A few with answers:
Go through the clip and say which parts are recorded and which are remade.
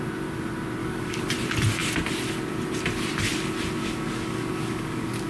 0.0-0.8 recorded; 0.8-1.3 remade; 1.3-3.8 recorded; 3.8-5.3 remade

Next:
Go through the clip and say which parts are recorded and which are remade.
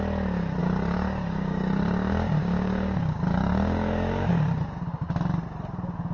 0.0-0.6 recorded; 0.6-4.3 remade; 4.3-6.1 recorded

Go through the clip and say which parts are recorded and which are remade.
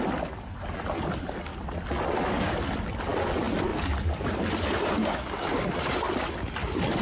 0.0-5.0 recorded; 5.0-5.6 remade; 5.6-7.0 recorded